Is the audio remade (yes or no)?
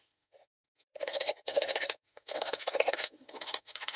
yes